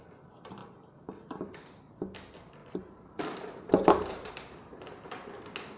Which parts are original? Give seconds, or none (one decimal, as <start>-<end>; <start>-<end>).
0.0-0.6; 1.9-2.6; 4.3-5.8